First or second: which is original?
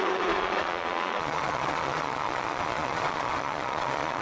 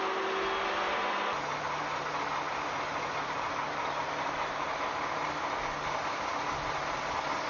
second